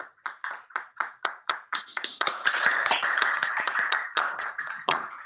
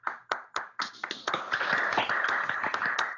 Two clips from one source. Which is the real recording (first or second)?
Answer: second